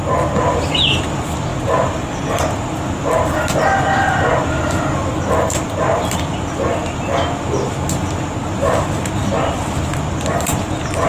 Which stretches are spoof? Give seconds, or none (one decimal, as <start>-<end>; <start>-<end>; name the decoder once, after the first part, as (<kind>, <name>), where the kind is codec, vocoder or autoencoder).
none